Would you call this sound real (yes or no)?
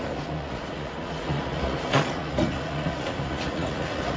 no